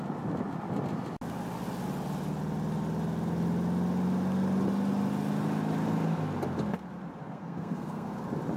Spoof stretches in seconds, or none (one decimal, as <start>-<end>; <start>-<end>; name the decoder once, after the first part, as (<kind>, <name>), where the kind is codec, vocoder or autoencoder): 7.2-8.2 (codec, SNAC)